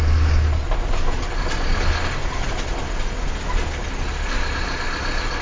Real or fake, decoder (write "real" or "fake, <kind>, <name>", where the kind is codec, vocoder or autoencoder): real